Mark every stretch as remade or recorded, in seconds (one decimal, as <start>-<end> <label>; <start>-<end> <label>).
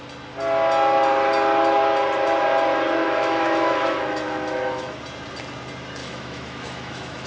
0.0-3.0 recorded; 3.0-5.0 remade; 5.0-6.0 recorded; 6.0-7.3 remade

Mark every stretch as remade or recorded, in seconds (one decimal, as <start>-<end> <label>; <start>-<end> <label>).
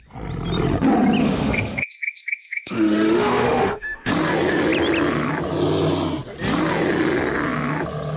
0.0-1.2 recorded; 1.2-4.1 remade; 4.1-8.2 recorded